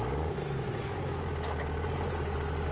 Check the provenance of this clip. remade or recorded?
recorded